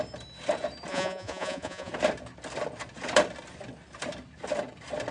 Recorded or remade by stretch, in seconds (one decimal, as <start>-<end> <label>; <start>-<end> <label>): 0.0-0.9 recorded; 0.9-1.9 remade; 1.9-5.1 recorded